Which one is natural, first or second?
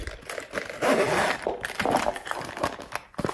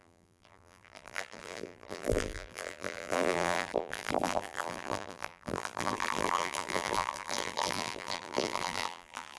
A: first